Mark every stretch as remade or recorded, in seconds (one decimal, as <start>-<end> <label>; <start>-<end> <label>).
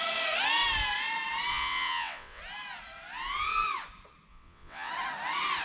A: 0.0-1.5 recorded; 1.5-2.4 remade; 2.4-4.3 recorded; 4.3-4.9 remade; 4.9-5.6 recorded